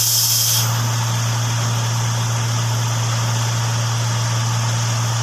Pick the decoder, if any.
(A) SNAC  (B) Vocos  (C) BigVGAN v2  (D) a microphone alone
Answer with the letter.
D